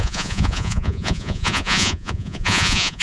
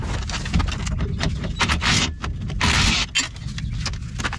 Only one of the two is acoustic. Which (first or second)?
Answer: second